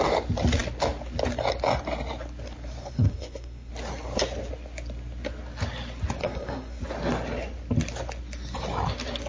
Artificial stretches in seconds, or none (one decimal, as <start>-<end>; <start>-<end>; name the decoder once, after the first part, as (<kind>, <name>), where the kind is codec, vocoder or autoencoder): 2.8-3.7 (codec, SNAC); 6.2-6.8